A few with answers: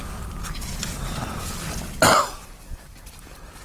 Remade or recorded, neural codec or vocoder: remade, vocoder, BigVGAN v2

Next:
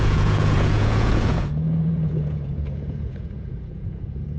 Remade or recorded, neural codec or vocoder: remade, vocoder, Vocos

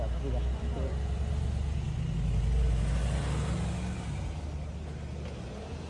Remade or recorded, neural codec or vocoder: recorded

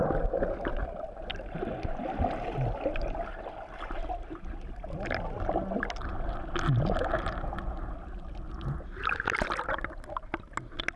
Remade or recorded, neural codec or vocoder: recorded